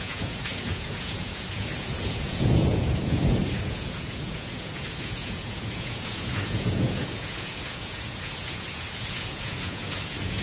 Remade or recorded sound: remade